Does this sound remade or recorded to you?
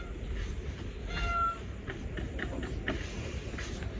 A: recorded